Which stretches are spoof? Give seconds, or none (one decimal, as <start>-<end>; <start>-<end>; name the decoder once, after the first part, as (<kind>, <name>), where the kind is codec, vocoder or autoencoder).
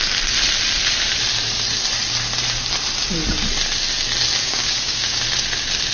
4.4-5.2 (codec, DAC)